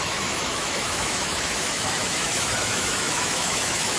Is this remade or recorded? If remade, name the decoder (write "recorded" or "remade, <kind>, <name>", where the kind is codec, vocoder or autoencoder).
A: remade, autoencoder, DAC-VAE